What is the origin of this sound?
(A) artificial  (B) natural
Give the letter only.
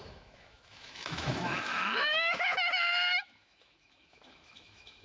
A